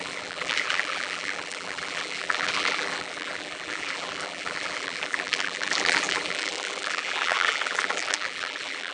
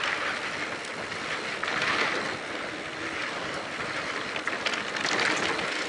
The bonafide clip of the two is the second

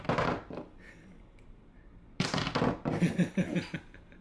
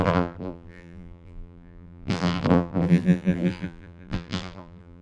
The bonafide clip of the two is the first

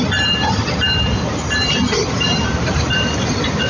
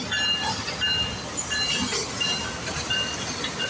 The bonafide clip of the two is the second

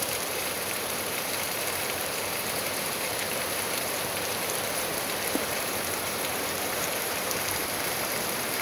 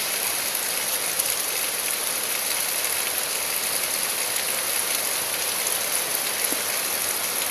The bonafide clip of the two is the second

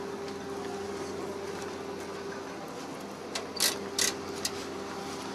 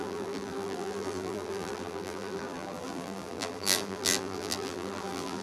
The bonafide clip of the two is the first